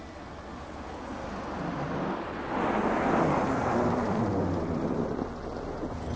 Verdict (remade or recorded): recorded